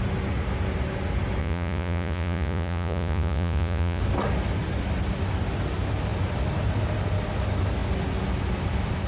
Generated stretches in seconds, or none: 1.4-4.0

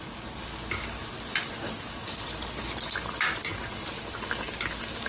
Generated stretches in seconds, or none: none

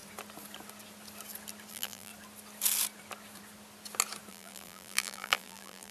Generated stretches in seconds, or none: 1.7-2.1; 4.3-5.9

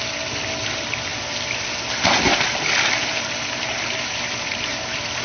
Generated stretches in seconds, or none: none

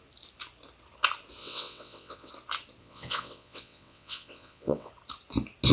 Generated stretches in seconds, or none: 1.4-2.3; 2.8-4.9

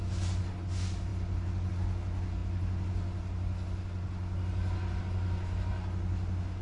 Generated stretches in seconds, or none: none